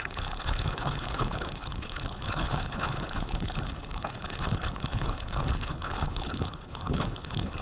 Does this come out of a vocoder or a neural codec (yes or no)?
yes